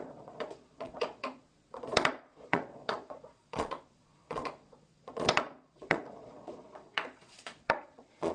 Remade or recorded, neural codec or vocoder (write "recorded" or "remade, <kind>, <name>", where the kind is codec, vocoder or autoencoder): remade, vocoder, Vocos